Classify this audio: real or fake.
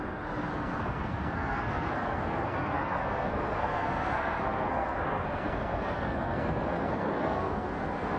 fake